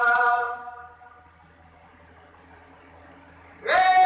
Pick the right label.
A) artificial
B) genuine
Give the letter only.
B